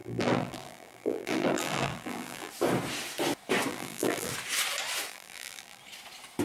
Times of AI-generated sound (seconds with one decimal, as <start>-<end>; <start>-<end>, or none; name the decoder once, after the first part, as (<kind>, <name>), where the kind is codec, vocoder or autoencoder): 0.0-2.5 (vocoder, BigVGAN v2); 3.7-4.3; 5.1-5.8